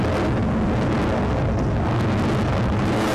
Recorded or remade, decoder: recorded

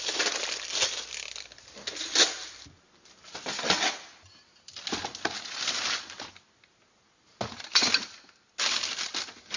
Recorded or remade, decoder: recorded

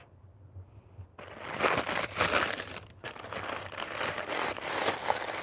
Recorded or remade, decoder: recorded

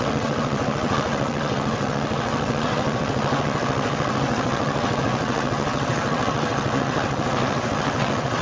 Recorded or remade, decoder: remade, vocoder, WaveNeXt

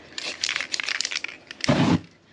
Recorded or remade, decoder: recorded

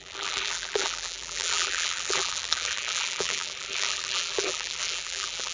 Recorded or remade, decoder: remade, vocoder, BigVGAN v2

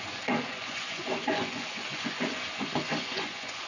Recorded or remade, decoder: remade, vocoder, Vocos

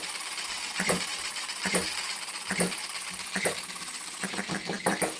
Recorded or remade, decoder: recorded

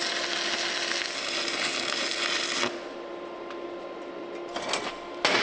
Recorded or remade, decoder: recorded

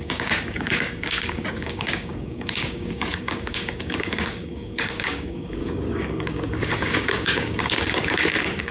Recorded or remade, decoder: remade, codec, DAC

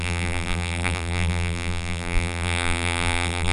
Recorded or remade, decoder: remade, vocoder, BigVGAN v2